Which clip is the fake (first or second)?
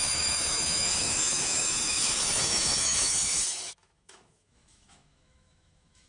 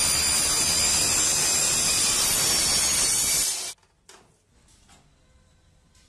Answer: first